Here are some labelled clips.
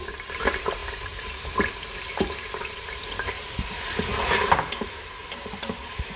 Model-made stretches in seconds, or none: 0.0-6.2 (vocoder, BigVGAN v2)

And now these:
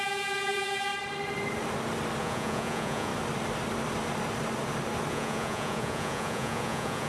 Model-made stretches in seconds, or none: 0.0-0.9 (vocoder, Vocos); 2.2-3.1; 5.1-7.1

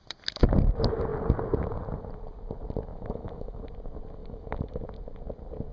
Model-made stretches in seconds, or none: 2.9-3.6 (autoencoder, DAC-VAE); 4.2-4.8

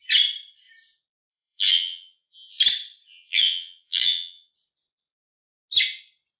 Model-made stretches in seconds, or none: 1.3-2.6 (vocoder, BigVGAN v2); 3.1-4.5